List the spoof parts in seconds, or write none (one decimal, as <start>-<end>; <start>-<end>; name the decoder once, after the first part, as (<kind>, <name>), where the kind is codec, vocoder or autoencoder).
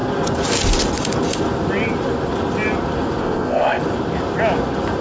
3.2-3.8 (codec, ZipCodec)